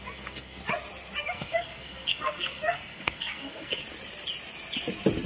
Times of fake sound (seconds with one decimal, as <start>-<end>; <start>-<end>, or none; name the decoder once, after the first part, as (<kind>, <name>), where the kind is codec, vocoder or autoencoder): 0.0-0.6 (codec, SNAC); 1.2-3.8